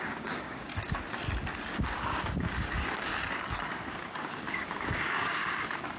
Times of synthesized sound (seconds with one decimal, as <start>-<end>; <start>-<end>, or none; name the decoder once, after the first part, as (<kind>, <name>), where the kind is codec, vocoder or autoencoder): 0.0-0.7 (codec, DAC); 1.7-3.1; 3.7-6.0